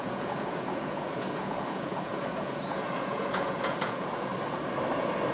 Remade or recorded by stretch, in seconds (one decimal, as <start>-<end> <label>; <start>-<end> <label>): 0.0-4.3 remade; 4.3-5.3 recorded

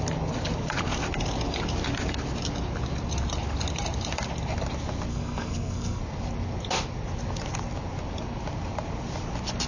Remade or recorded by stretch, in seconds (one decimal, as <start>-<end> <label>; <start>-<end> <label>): 0.0-5.1 recorded; 5.1-6.0 remade; 6.0-9.7 recorded

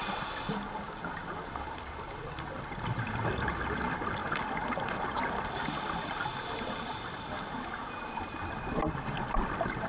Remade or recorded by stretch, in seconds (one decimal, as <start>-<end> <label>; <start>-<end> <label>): 0.0-9.9 recorded

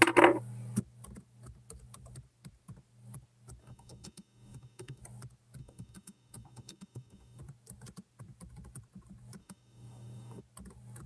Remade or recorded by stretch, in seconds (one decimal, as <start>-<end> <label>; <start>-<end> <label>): 0.0-3.6 recorded; 3.6-5.0 remade; 5.0-5.6 recorded; 5.6-7.4 remade; 7.4-9.4 recorded; 9.4-10.4 remade; 10.4-11.1 recorded

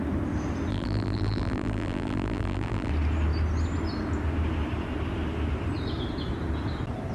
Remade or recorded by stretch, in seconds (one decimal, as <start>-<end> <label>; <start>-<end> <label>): 0.0-0.7 recorded; 0.7-2.9 remade; 2.9-7.1 recorded

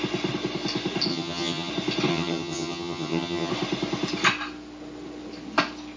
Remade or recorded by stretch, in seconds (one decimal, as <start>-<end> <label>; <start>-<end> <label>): 0.0-1.1 recorded; 1.1-1.7 remade; 1.7-2.1 recorded; 2.1-3.5 remade; 3.5-6.0 recorded

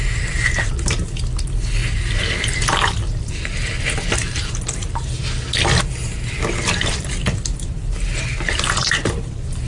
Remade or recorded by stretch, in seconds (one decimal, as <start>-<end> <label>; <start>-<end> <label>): 0.0-1.8 remade; 1.8-6.9 recorded; 6.9-9.7 remade

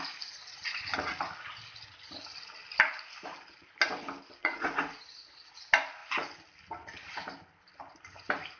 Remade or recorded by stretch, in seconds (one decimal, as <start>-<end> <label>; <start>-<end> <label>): 0.0-4.4 recorded; 4.4-5.0 remade; 5.0-8.6 recorded